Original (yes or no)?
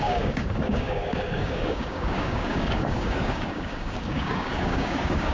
no